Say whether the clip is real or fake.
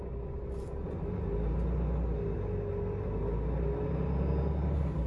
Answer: real